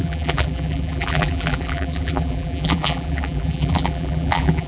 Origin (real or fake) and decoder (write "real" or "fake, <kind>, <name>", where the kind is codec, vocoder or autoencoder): fake, vocoder, BigVGAN v2